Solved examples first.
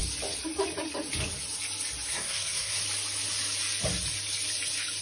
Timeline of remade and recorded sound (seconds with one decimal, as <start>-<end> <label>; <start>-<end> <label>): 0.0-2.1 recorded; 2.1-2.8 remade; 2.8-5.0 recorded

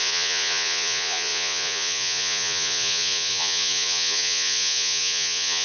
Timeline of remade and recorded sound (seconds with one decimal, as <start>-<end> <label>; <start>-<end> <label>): 0.0-5.6 remade

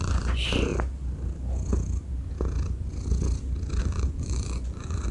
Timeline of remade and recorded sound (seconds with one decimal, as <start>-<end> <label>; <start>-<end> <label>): 0.0-0.7 remade; 0.7-3.8 recorded; 3.8-5.1 remade